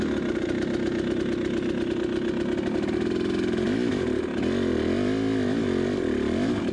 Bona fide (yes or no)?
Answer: yes